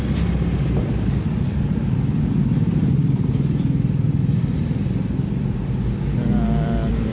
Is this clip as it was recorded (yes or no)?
yes